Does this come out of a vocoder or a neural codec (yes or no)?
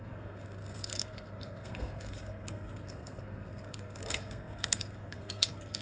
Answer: yes